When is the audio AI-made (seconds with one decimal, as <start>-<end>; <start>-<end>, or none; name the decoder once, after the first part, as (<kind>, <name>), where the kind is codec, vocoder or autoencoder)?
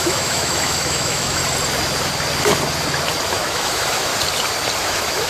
0.0-1.4 (autoencoder, DAC-VAE); 3.3-4.1; 4.8-5.3